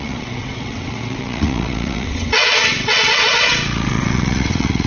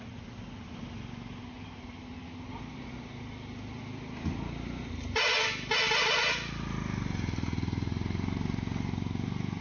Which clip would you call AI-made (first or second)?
first